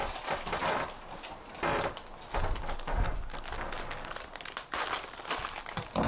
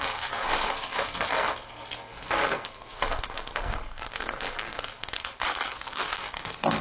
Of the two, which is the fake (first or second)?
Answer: second